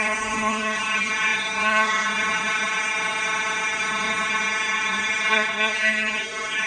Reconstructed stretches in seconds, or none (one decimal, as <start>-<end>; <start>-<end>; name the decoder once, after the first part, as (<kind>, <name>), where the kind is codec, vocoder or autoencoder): 0.0-6.7 (codec, SNAC)